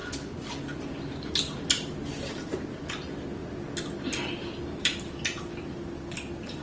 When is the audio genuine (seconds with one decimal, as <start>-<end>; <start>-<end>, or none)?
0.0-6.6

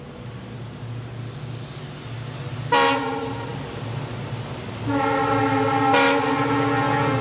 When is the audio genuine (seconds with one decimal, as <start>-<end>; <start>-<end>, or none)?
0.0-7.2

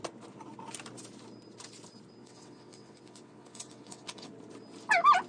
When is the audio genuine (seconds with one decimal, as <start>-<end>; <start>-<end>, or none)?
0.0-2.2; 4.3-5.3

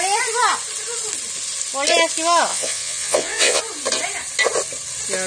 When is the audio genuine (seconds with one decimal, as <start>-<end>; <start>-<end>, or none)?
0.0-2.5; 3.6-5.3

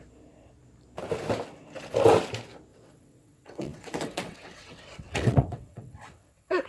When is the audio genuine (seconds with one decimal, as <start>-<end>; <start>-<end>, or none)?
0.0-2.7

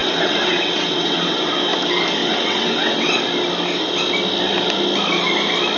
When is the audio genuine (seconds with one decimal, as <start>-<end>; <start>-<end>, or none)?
1.5-2.2; 3.1-5.8